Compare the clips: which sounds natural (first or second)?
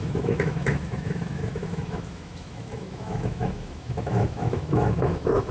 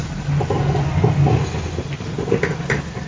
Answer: second